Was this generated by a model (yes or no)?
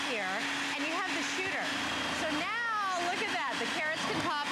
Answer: no